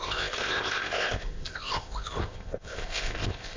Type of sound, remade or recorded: remade